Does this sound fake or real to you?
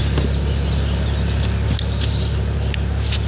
real